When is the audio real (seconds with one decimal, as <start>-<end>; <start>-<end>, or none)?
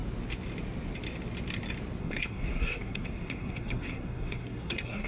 0.0-2.0